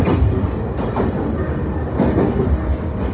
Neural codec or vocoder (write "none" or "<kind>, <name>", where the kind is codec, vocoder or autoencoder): none